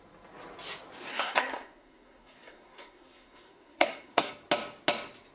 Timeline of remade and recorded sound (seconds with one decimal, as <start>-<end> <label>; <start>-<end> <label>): 0.0-1.1 recorded; 1.1-4.3 remade; 4.3-5.3 recorded